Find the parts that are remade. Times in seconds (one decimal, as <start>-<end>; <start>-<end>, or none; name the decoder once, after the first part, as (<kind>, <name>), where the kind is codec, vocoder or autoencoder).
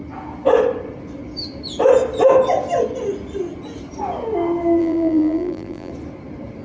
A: 4.8-5.9 (vocoder, BigVGAN v2)